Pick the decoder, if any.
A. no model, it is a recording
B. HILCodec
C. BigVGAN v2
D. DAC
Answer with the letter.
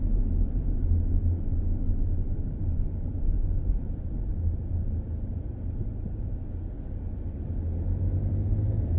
A